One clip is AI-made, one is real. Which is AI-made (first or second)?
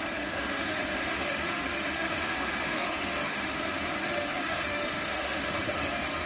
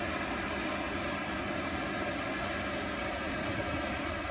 first